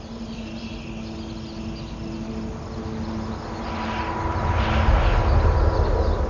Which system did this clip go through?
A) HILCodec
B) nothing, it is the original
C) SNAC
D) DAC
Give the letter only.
B